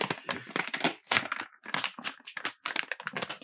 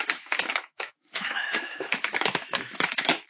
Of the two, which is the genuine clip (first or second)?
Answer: first